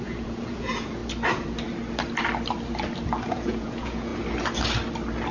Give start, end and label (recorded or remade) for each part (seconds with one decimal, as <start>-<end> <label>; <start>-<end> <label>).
0.0-1.0 remade; 1.0-3.2 recorded; 3.2-4.1 remade; 4.1-5.3 recorded